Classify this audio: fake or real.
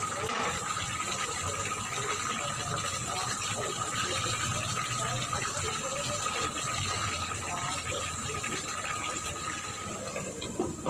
real